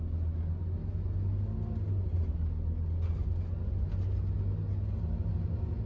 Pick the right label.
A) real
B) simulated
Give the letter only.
A